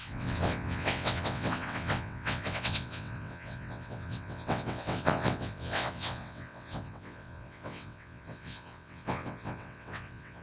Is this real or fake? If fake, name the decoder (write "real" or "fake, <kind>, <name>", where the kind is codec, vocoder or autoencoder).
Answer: fake, vocoder, WaveNeXt